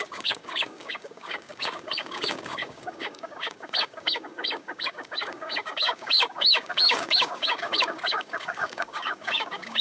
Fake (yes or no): yes